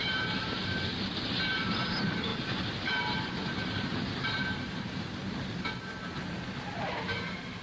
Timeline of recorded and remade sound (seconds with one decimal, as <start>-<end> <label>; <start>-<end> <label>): 0.0-0.9 remade; 0.9-1.7 recorded; 1.7-2.3 remade; 2.3-3.3 recorded; 3.3-5.2 remade; 5.2-7.1 recorded; 7.1-7.6 remade